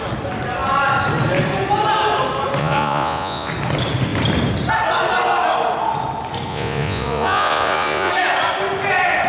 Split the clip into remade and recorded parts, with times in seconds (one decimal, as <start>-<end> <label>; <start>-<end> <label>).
0.0-2.6 recorded; 2.6-3.5 remade; 3.5-6.5 recorded; 6.5-8.1 remade; 8.1-9.3 recorded